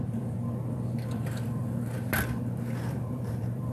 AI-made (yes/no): yes